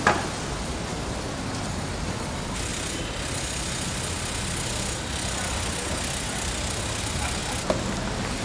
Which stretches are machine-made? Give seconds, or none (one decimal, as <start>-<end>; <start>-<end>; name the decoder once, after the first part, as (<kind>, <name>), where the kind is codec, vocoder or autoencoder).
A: 0.0-2.7 (vocoder, BigVGAN v2); 7.0-7.4